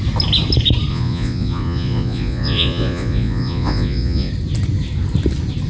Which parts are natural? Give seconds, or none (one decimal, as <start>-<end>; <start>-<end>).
0.0-0.9; 4.3-5.7